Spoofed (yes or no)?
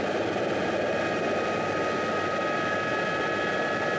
no